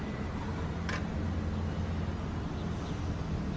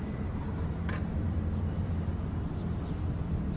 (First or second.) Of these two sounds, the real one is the first